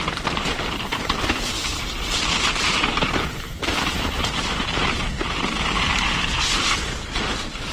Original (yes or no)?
no